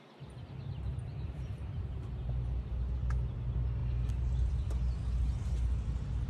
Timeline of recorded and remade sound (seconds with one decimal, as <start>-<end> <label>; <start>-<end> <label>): 0.0-0.9 recorded; 0.9-1.8 remade; 1.8-6.3 recorded